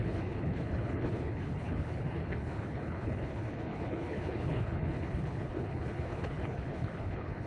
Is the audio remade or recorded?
remade